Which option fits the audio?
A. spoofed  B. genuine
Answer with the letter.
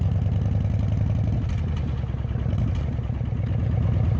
B